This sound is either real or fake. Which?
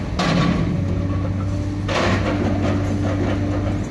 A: real